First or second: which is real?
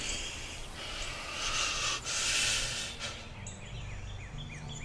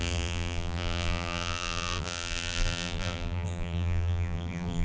first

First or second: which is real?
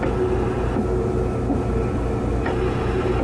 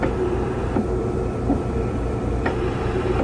first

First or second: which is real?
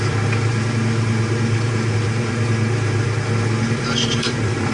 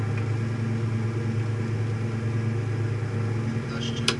second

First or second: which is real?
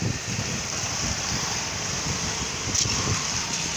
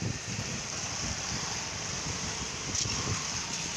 first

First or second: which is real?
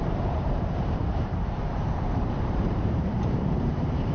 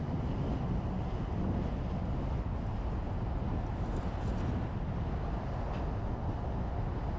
second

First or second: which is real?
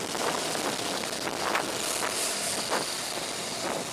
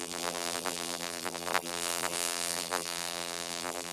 first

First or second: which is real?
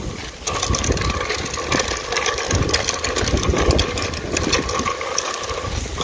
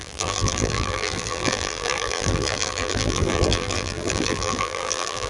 first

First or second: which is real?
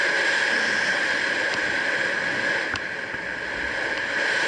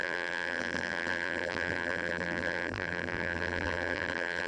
first